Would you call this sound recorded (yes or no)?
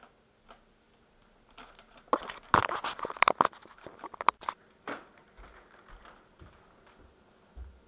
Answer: yes